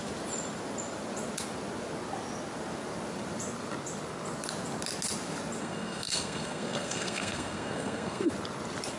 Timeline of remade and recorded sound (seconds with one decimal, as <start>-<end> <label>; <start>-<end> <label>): 0.0-5.6 recorded; 5.6-8.3 remade; 8.3-9.0 recorded